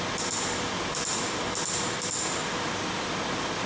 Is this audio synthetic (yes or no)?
no